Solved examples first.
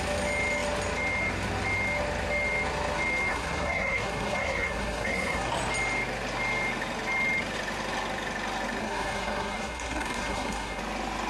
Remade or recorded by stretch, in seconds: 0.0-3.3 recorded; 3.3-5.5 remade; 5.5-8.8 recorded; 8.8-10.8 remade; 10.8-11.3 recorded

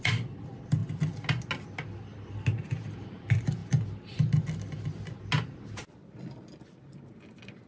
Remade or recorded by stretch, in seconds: 0.0-7.7 recorded

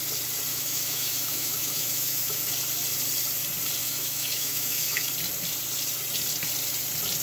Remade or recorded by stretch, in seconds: 0.0-0.5 recorded; 0.5-2.5 remade; 2.5-3.8 recorded; 3.8-5.1 remade; 5.1-7.2 recorded

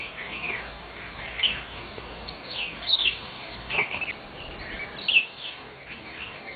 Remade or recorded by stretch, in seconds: 0.0-4.0 remade; 4.0-5.2 recorded; 5.2-6.6 remade